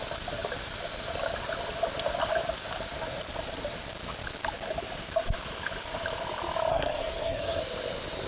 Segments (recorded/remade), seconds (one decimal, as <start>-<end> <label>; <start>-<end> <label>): 0.0-6.7 recorded; 6.7-7.6 remade; 7.6-8.3 recorded